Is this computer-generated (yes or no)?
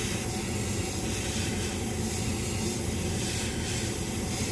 no